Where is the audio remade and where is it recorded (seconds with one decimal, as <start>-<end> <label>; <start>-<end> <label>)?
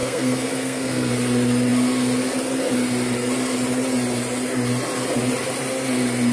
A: 0.0-1.1 remade; 1.1-6.3 recorded